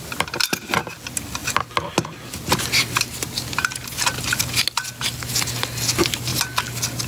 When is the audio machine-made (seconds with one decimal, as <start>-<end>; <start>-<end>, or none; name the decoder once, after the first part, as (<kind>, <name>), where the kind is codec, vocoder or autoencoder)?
none